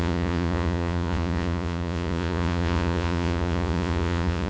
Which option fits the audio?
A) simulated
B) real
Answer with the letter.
A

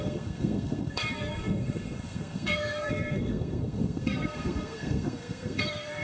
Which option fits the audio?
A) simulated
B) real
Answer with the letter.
A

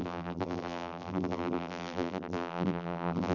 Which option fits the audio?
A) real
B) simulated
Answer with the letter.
B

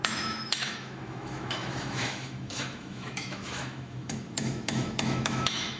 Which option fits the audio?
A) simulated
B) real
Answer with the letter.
A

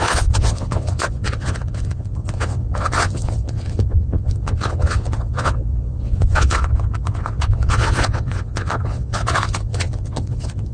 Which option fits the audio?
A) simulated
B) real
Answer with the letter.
A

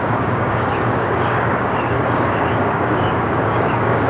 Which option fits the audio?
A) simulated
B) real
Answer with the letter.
A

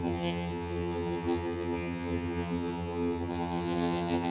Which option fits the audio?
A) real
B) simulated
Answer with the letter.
B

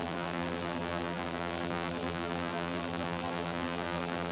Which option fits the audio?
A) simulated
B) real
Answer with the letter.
A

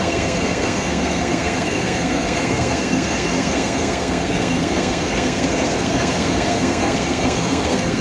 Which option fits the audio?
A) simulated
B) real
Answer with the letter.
A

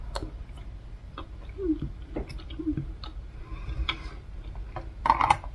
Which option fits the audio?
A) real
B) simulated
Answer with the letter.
A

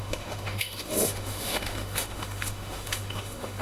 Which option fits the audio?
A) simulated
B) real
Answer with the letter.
A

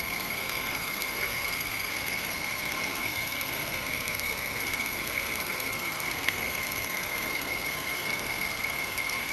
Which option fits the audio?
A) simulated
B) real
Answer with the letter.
A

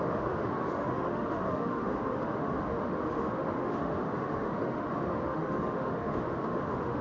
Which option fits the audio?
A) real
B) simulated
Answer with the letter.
B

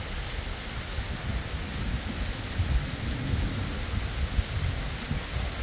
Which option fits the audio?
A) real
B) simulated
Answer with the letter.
A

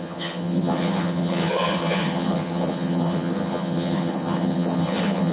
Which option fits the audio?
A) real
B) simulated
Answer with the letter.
B